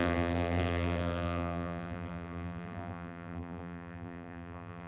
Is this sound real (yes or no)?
no